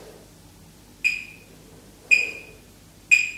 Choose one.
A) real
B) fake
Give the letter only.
A